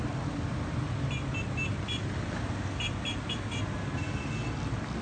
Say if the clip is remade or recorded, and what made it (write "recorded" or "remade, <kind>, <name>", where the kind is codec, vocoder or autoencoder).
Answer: recorded